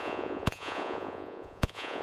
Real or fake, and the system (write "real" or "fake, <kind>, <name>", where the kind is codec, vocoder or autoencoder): fake, vocoder, Vocos